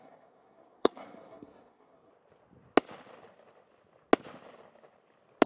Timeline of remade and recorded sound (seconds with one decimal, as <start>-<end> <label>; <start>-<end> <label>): 0.0-2.1 remade; 2.1-5.5 recorded